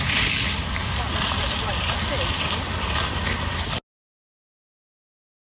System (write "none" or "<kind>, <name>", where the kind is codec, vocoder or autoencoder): none